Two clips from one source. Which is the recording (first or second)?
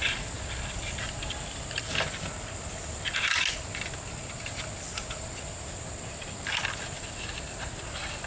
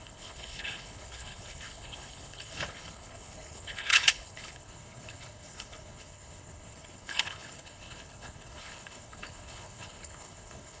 first